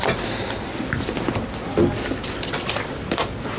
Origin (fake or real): real